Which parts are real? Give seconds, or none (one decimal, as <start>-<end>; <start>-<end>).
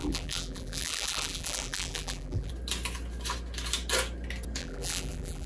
2.5-4.6